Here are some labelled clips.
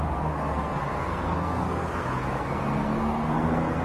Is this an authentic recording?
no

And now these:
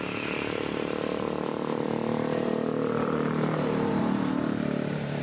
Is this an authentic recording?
no